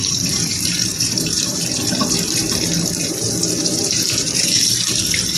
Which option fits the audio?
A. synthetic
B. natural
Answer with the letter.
A